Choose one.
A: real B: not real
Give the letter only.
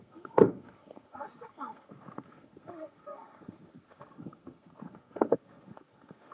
B